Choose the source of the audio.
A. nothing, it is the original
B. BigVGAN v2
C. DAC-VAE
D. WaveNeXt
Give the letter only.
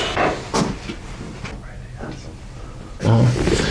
A